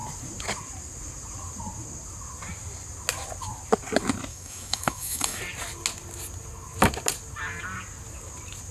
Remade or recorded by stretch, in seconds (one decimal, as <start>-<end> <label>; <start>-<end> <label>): 0.0-4.3 recorded; 4.3-5.4 remade; 5.4-8.7 recorded